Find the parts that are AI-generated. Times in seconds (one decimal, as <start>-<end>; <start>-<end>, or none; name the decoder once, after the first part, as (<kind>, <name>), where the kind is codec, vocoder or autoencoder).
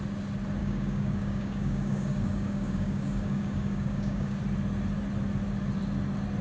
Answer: 0.6-4.4 (codec, DAC)